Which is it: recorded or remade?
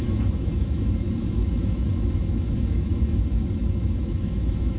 remade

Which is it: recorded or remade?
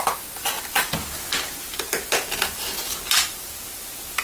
recorded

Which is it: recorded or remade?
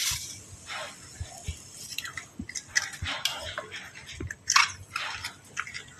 recorded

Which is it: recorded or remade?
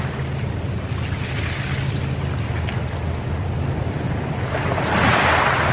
recorded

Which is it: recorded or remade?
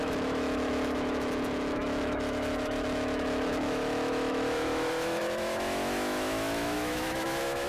remade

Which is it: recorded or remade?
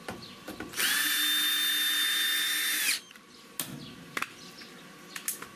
recorded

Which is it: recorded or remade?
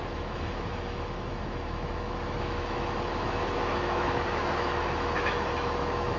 remade